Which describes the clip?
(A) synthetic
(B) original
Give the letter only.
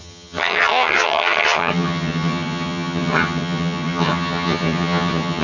A